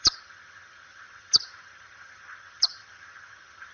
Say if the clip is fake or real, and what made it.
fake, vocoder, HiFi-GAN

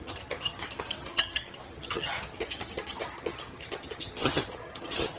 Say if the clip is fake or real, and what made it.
fake, vocoder, HiFi-GAN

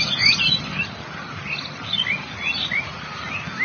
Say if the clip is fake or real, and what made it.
real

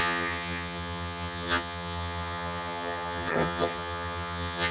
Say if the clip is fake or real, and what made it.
fake, vocoder, HiFi-GAN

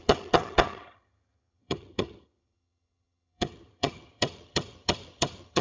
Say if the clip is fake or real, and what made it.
fake, vocoder, HiFi-GAN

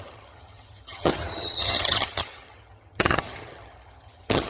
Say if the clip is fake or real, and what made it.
fake, vocoder, HiFi-GAN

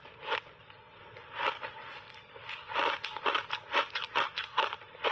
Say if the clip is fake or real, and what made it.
real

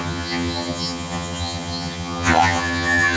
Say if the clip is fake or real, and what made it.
fake, vocoder, HiFi-GAN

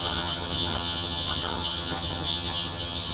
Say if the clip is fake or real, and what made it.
fake, vocoder, HiFi-GAN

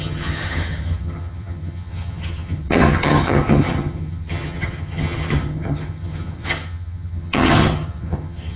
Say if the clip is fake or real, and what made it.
fake, vocoder, HiFi-GAN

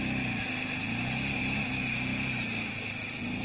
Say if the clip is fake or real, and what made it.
real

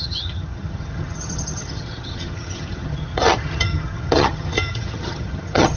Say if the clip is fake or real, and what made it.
fake, vocoder, HiFi-GAN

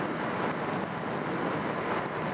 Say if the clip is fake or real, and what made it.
real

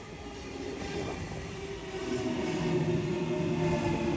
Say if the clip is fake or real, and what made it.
real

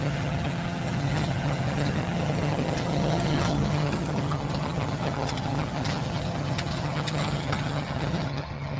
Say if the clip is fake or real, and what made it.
fake, vocoder, HiFi-GAN